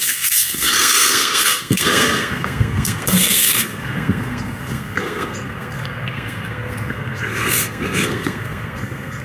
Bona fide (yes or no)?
no